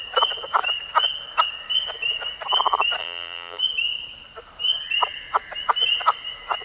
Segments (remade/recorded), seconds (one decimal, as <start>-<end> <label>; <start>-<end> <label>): 0.0-3.0 recorded; 3.0-3.6 remade; 3.6-6.6 recorded